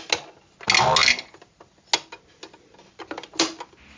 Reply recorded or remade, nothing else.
recorded